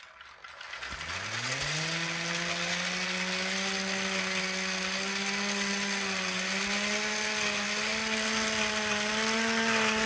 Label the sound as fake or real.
real